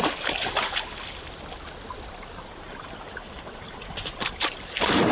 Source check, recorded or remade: recorded